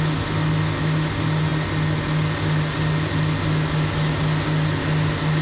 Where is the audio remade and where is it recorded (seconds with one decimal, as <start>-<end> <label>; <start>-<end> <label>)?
0.0-5.4 recorded